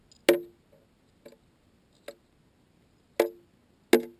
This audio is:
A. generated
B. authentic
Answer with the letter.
B